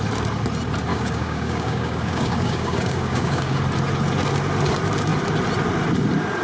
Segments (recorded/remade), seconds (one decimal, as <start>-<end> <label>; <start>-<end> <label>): 0.0-0.9 recorded; 0.9-3.6 remade; 3.6-6.4 recorded